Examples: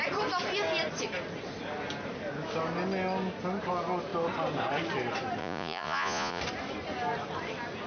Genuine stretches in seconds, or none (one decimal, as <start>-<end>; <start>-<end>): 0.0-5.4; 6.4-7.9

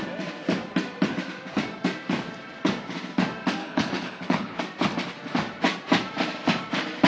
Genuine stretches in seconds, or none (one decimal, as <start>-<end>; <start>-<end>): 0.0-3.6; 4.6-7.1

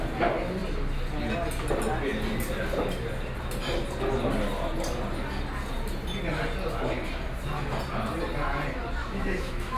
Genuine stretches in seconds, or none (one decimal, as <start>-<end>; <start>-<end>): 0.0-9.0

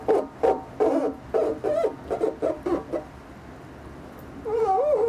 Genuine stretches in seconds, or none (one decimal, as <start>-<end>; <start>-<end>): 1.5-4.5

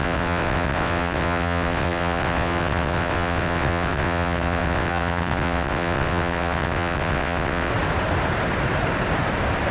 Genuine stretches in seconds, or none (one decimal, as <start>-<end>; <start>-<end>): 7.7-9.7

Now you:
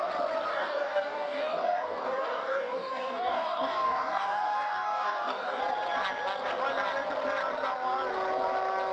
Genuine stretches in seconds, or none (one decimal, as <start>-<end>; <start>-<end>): 0.0-0.5; 5.6-8.9

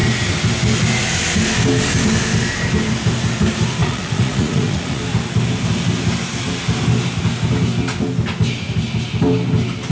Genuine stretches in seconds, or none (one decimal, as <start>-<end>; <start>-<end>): 0.0-3.8; 5.0-9.9